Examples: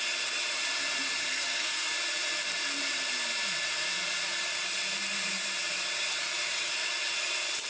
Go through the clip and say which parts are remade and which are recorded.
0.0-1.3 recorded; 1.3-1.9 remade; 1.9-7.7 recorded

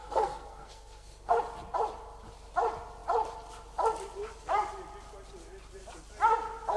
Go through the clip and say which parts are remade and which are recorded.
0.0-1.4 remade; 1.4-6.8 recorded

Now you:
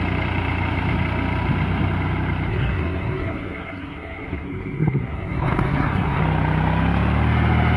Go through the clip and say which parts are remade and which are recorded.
0.0-2.5 recorded; 2.5-6.2 remade; 6.2-7.8 recorded